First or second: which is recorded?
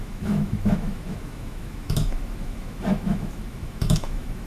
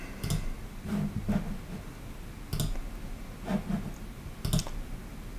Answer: second